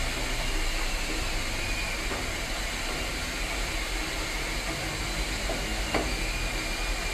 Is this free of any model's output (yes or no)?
yes